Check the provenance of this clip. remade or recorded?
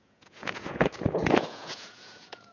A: remade